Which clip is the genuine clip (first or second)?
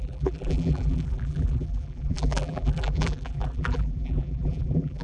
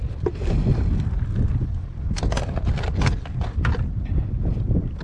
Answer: second